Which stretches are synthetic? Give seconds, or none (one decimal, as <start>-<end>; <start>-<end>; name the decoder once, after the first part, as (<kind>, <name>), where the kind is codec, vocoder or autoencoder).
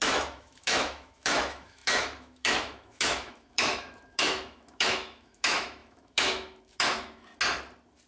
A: 0.0-7.3 (autoencoder, DAC-VAE)